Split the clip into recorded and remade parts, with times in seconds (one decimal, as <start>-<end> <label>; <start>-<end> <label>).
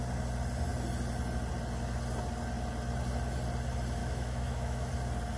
0.0-4.0 recorded; 4.0-4.9 remade; 4.9-5.4 recorded